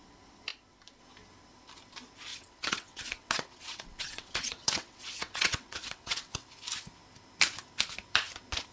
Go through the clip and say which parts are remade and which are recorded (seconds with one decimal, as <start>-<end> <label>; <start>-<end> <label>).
0.0-2.3 recorded; 2.3-6.5 remade; 6.5-8.7 recorded